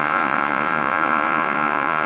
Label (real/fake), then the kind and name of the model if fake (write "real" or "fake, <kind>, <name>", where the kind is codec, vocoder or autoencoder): fake, vocoder, Vocos